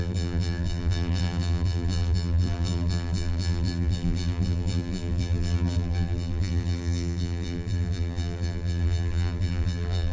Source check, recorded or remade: remade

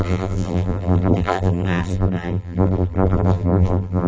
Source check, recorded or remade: remade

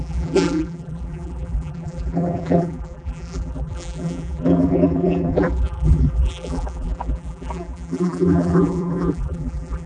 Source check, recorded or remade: remade